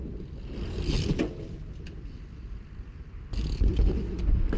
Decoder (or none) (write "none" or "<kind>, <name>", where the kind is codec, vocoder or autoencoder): none